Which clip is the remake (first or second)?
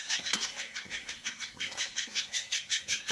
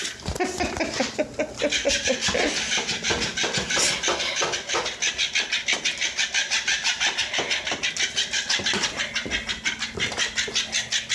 first